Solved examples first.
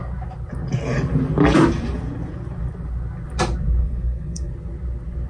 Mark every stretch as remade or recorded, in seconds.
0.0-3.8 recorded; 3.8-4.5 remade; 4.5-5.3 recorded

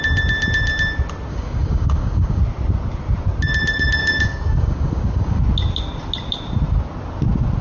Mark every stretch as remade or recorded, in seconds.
0.0-1.3 recorded; 1.3-2.4 remade; 2.4-4.0 recorded; 4.0-5.4 remade; 5.4-7.6 recorded

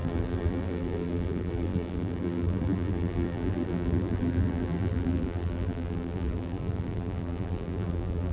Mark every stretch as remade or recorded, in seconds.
0.0-8.3 remade

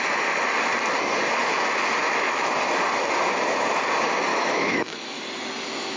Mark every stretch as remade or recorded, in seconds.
0.0-2.0 recorded; 2.0-2.5 remade; 2.5-4.3 recorded; 4.3-5.2 remade; 5.2-6.0 recorded